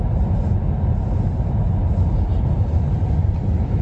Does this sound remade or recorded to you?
recorded